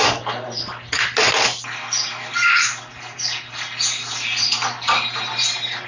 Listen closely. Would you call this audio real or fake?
real